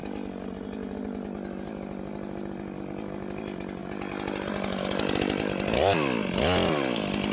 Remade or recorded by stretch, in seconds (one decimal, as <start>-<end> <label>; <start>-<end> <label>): 0.0-7.3 recorded